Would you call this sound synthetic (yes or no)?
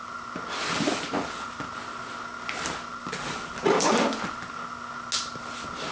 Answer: no